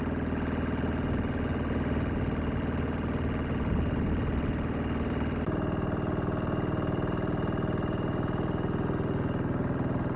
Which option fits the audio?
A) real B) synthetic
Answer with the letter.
A